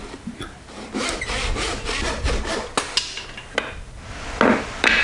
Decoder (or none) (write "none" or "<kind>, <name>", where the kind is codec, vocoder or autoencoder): none